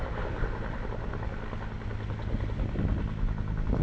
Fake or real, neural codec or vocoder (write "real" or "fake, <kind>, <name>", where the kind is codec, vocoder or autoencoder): real